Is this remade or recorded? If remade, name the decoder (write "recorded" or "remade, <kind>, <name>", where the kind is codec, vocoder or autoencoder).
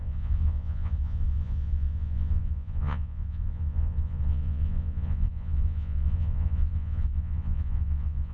remade, vocoder, Vocos